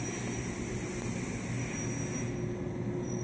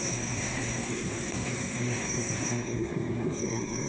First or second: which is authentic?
first